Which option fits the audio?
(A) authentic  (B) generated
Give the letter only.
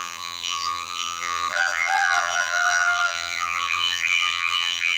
B